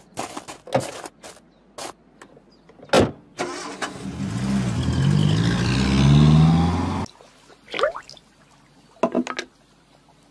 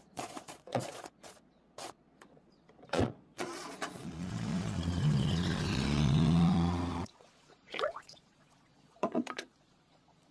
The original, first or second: first